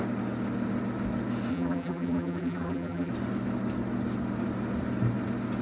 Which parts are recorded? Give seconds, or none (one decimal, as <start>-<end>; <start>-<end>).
0.0-1.5; 3.1-5.6